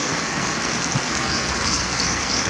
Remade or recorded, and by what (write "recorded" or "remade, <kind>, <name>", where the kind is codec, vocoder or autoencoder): remade, codec, SNAC